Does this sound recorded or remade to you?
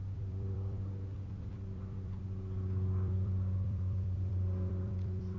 remade